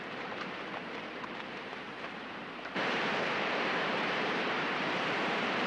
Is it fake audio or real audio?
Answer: fake